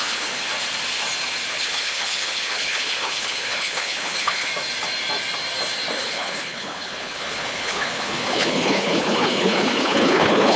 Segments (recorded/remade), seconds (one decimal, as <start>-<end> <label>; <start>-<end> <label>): 0.0-0.5 remade; 0.5-1.5 recorded; 1.5-4.5 remade; 4.5-6.0 recorded; 6.0-10.6 remade